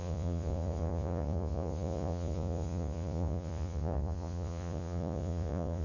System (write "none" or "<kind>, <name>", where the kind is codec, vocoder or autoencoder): vocoder, Vocos